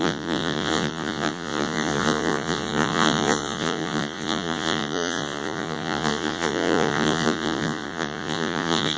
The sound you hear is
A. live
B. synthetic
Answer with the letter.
B